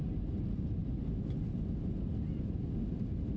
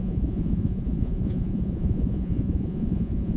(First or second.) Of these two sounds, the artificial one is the second